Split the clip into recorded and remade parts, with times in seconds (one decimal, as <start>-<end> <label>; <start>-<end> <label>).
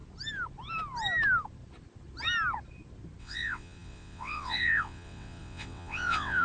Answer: 0.0-3.2 recorded; 3.2-6.4 remade